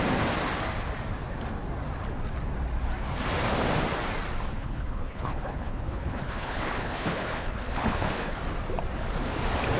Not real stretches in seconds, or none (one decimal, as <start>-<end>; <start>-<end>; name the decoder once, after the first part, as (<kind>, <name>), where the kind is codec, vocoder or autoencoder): 4.5-8.4 (codec, HILCodec)